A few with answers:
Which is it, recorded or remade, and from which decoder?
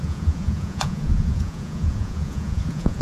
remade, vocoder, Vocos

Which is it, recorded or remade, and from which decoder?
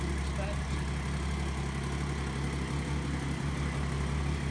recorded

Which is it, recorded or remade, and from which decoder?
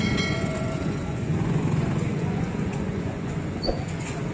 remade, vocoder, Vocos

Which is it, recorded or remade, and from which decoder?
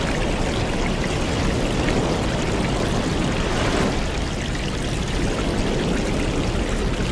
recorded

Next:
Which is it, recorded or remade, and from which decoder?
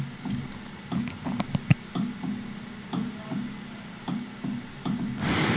recorded